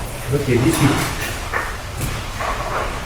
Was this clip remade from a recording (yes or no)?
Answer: yes